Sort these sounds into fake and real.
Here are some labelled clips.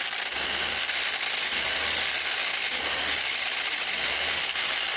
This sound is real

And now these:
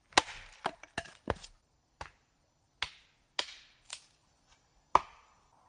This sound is real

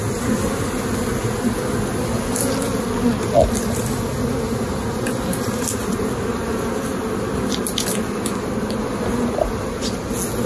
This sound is real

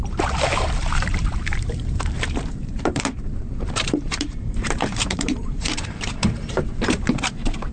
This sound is fake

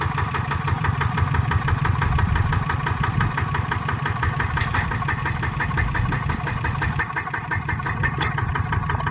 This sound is fake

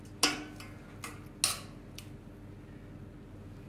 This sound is real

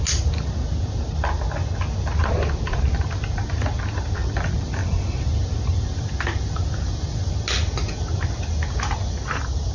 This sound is real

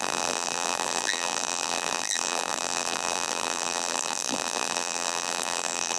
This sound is fake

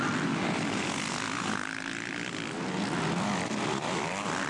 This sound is real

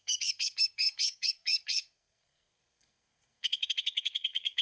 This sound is fake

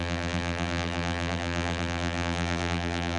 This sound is fake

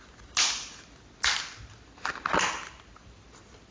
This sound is real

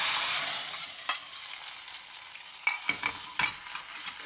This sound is real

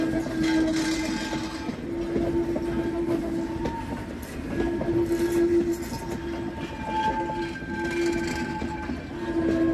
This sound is real